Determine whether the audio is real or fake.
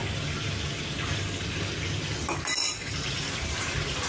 real